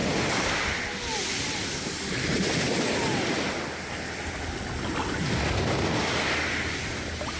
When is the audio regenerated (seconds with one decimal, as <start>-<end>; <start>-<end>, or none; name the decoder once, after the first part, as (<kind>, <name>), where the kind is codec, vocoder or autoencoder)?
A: none